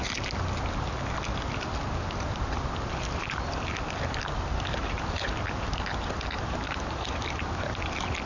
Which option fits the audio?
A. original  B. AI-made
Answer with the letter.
A